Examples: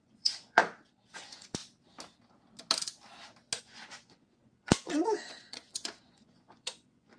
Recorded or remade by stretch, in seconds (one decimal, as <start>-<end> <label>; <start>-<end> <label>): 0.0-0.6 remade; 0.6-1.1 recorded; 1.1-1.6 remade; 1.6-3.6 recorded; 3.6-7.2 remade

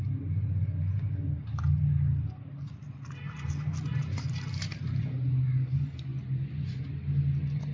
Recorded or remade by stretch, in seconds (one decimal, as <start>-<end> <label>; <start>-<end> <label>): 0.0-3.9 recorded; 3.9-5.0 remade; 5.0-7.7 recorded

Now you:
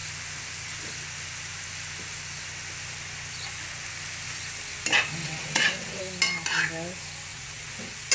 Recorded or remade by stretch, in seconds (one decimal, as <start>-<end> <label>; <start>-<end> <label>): 0.0-5.2 recorded; 5.2-6.0 remade; 6.0-7.3 recorded; 7.3-8.1 remade

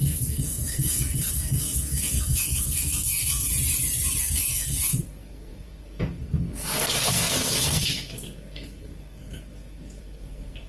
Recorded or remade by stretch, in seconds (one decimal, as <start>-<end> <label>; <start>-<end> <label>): 0.0-3.5 remade; 3.5-4.2 recorded; 4.2-10.7 remade

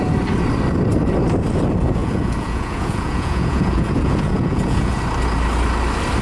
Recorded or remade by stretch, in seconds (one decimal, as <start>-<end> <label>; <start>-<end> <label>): 0.0-2.0 recorded; 2.0-5.0 remade; 5.0-6.2 recorded